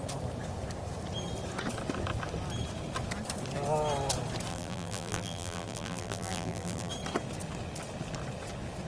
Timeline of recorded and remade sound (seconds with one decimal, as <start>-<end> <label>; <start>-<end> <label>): 0.0-4.5 recorded; 4.5-6.9 remade; 6.9-8.9 recorded